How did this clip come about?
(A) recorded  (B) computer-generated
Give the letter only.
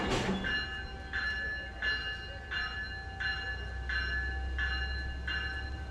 A